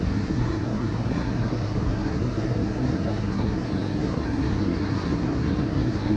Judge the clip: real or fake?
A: fake